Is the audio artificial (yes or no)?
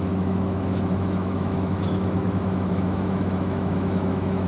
yes